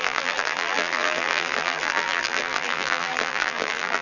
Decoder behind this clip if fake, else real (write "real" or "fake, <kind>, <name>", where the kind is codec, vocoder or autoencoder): fake, vocoder, BigVGAN v2